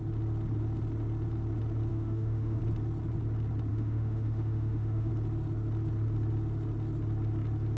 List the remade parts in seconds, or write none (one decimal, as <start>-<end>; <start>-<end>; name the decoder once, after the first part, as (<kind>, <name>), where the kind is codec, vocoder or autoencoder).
1.9-2.6 (autoencoder, DAC-VAE); 3.7-5.1